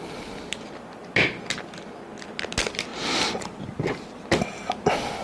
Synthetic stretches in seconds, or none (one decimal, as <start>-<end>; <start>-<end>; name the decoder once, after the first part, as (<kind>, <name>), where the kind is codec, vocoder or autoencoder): none